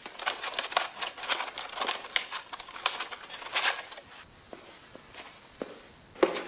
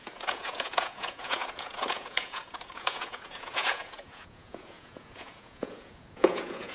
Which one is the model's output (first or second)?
second